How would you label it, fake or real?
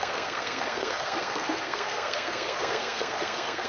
fake